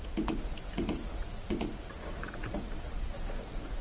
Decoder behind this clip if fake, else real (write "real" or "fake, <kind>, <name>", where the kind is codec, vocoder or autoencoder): fake, vocoder, Vocos